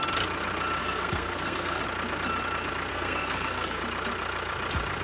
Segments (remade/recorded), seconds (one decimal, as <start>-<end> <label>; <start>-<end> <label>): 0.0-0.8 recorded; 0.8-1.8 remade; 1.8-2.9 recorded; 2.9-3.8 remade; 3.8-5.0 recorded